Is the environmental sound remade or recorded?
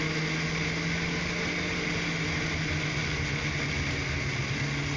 recorded